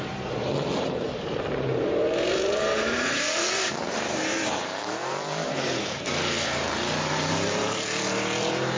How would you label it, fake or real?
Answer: fake